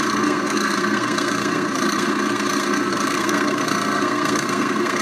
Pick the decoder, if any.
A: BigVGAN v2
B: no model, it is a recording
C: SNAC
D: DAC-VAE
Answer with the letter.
C